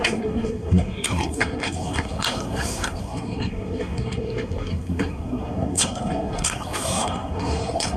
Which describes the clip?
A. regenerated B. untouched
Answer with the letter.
A